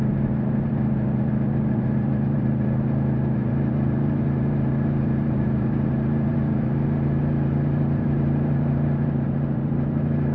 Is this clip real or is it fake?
fake